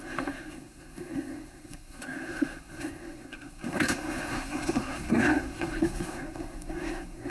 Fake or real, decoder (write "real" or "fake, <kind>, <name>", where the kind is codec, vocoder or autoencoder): fake, codec, SNAC